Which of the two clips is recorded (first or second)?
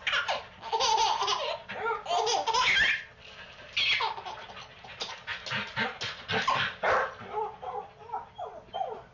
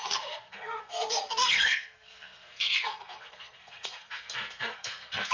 first